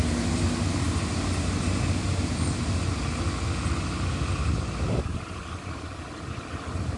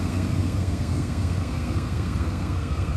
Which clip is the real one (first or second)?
first